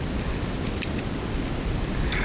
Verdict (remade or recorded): recorded